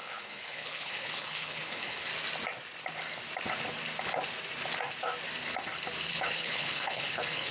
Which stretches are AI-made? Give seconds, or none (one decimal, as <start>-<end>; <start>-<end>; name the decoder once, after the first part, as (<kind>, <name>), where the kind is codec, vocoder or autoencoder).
0.0-2.1 (codec, HILCodec); 6.1-7.5